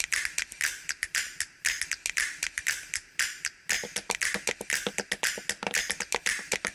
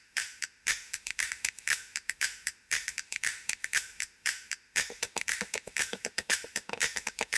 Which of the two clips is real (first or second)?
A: first